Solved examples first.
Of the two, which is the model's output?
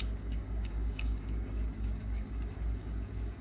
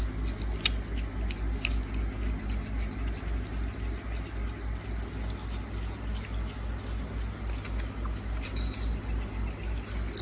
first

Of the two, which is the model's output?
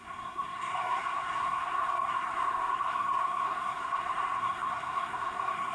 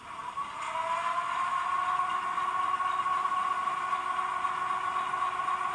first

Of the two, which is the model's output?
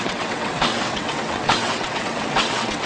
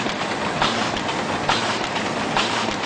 first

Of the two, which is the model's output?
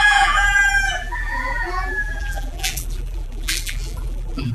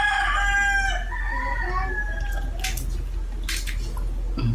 first